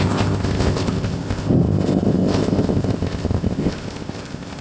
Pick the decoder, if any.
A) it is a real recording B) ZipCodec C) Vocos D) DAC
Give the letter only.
B